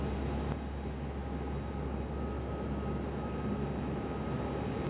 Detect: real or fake real